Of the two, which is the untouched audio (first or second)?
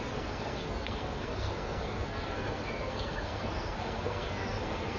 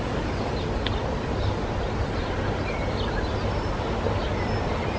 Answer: second